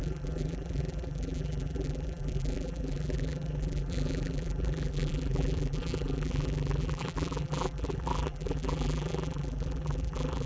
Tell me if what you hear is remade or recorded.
remade